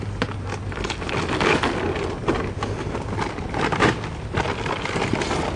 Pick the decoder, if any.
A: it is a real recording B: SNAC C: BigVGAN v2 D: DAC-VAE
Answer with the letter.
A